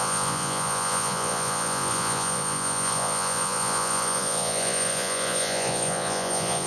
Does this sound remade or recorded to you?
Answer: remade